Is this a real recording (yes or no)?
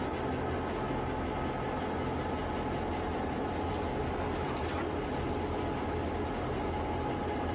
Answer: yes